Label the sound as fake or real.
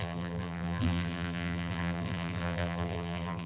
fake